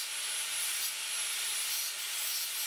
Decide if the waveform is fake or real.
real